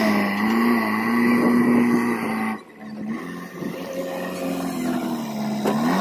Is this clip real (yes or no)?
yes